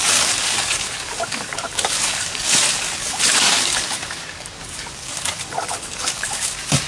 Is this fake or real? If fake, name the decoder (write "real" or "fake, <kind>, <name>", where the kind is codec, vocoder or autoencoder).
fake, codec, DAC